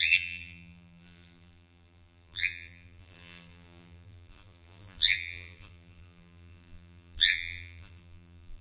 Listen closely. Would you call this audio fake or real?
fake